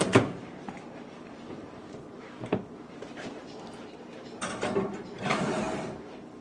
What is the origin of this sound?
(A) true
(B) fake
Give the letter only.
B